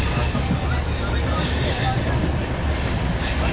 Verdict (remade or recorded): recorded